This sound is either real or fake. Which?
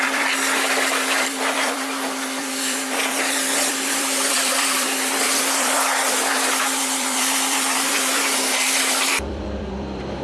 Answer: fake